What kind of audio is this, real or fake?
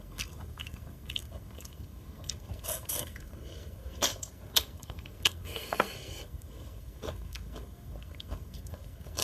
fake